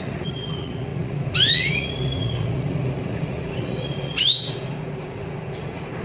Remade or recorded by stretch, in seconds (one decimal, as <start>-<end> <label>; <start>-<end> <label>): 0.0-6.0 remade